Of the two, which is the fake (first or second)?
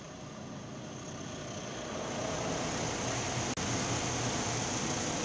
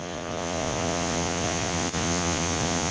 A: second